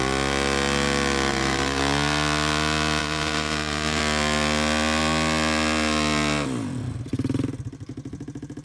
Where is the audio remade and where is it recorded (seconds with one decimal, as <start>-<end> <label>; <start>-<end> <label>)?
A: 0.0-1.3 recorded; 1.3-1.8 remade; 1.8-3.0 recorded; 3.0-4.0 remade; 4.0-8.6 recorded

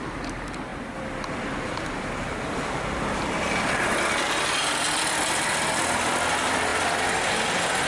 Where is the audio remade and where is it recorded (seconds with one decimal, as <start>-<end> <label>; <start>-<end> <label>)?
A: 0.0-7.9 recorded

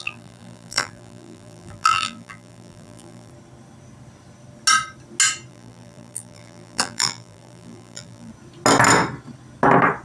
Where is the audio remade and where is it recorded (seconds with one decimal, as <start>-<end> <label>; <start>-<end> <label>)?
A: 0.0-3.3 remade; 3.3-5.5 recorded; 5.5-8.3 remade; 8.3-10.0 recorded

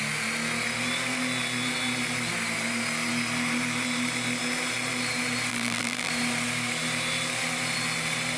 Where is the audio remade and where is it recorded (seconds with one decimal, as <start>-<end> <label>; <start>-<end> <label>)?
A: 0.0-5.5 recorded; 5.5-6.1 remade; 6.1-8.4 recorded